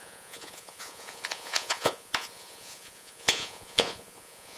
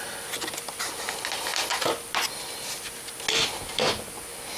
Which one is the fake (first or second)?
first